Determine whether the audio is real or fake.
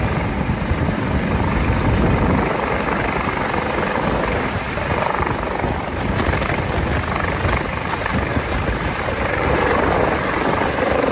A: real